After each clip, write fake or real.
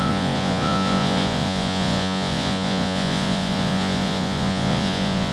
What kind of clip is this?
fake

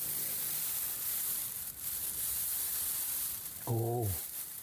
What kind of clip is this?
real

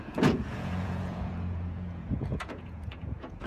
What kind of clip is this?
fake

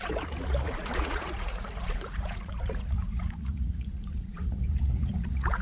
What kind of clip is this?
fake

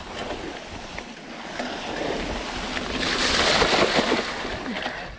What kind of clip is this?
real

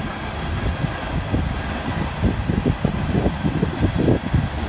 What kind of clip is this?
real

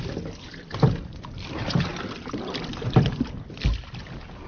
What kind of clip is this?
real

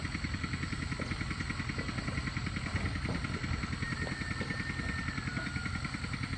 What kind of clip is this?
real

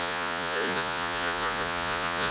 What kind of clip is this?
fake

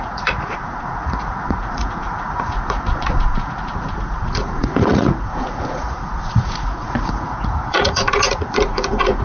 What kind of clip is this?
fake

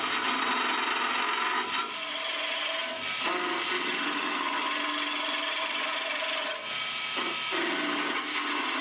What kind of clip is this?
real